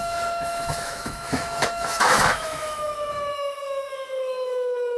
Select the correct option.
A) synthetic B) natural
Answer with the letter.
A